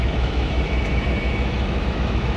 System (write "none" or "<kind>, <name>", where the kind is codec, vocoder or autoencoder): autoencoder, DAC-VAE